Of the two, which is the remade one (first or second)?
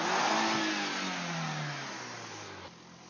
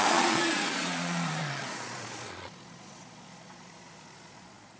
second